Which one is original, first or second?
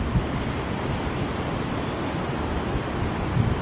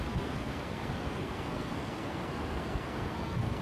first